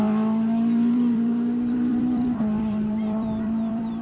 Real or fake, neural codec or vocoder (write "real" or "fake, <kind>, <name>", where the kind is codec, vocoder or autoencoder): fake, vocoder, BigVGAN v2